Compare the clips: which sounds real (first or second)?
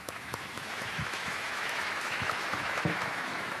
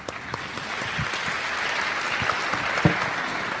second